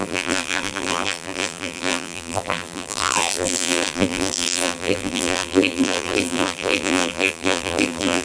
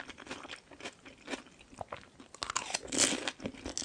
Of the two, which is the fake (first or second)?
first